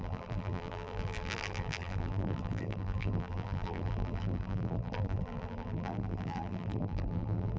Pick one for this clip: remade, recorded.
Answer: remade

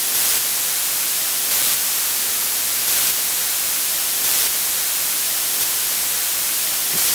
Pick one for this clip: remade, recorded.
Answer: remade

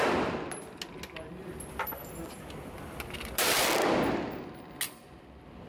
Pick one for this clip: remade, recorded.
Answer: recorded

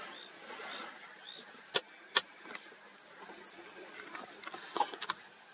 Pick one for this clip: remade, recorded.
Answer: recorded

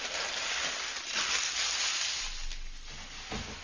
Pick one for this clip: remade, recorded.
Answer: recorded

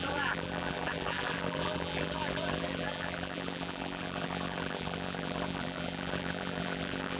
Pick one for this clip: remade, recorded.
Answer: remade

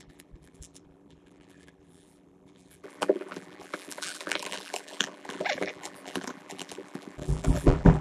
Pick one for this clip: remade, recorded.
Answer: remade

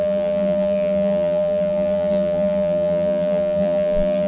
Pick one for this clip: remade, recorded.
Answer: remade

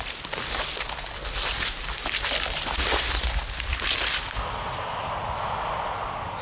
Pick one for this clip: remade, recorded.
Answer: recorded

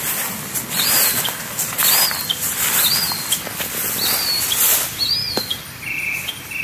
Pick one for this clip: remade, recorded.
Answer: recorded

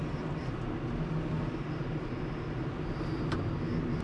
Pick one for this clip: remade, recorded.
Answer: recorded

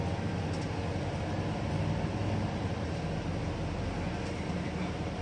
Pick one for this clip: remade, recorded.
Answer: recorded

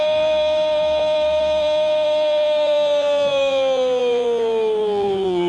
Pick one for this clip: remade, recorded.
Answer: remade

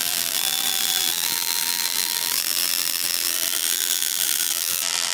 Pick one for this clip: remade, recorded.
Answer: remade